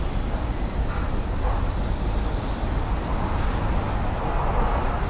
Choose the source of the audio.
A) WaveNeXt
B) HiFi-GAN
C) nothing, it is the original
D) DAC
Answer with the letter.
C